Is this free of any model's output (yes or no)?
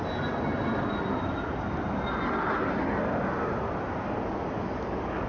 yes